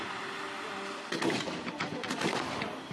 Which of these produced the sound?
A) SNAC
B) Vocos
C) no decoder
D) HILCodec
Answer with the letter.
C